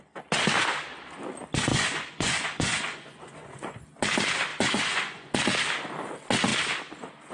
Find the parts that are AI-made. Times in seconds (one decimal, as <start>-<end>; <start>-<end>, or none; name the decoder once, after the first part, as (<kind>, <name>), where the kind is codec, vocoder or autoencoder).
1.7-3.8 (vocoder, Vocos); 4.5-5.3

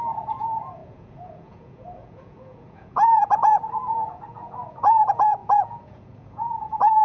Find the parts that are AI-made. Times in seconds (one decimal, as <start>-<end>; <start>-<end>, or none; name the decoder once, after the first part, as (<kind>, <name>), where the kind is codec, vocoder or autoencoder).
0.0-7.0 (vocoder, Vocos)